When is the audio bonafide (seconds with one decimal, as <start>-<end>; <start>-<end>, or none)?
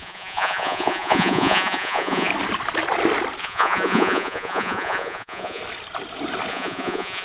2.3-3.4; 5.6-6.5